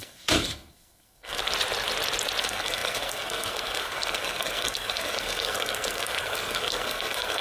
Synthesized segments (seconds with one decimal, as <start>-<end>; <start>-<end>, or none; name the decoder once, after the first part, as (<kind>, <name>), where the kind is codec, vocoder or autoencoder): 0.0-1.4 (codec, SNAC); 2.4-7.4